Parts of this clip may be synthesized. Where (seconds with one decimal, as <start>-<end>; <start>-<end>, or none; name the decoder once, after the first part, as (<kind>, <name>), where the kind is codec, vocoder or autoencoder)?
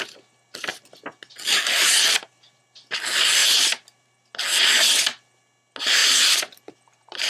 3.4-4.2 (vocoder, BigVGAN v2); 6.0-7.3